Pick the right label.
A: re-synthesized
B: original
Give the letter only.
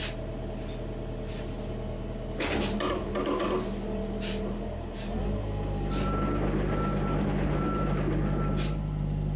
B